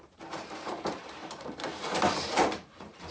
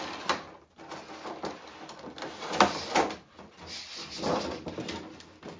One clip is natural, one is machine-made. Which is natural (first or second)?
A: second